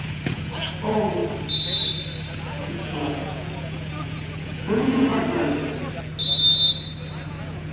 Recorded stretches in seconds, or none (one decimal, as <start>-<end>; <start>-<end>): 1.2-2.3; 5.1-7.3